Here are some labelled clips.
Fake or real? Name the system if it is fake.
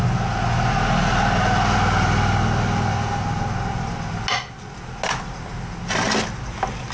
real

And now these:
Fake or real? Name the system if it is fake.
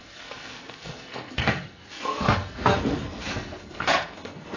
fake, codec, SNAC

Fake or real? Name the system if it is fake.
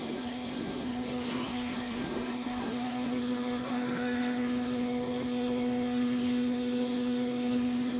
fake, codec, SNAC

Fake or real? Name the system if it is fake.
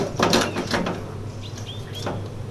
real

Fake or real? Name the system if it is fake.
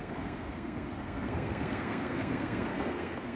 fake, codec, SNAC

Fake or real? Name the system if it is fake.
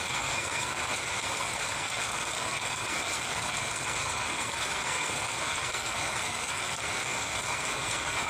fake, codec, SNAC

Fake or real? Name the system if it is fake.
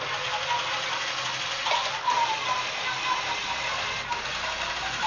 real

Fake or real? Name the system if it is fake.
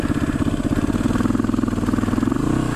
real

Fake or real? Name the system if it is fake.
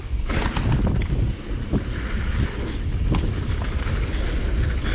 real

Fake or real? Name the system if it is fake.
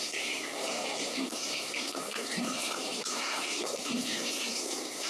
fake, codec, SNAC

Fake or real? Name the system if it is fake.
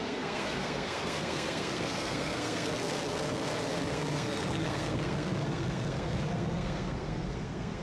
fake, codec, SNAC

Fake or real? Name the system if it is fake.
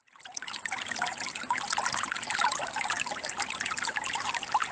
real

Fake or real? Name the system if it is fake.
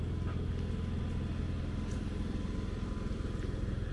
real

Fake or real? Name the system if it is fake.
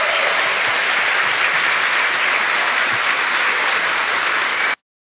real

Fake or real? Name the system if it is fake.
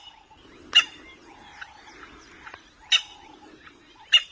real